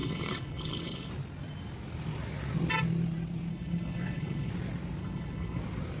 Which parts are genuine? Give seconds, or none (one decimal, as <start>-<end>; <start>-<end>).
1.1-3.5; 4.5-5.0; 5.6-6.0